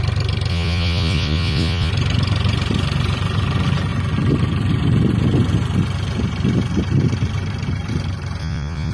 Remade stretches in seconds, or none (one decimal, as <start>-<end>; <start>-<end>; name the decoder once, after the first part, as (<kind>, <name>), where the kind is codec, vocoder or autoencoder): 0.5-1.9 (vocoder, Vocos); 8.4-8.9